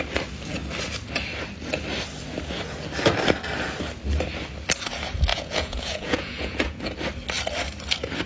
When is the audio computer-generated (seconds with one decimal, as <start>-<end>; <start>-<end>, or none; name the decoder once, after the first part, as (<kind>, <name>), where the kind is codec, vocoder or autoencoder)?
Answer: 5.3-6.8 (vocoder, Vocos)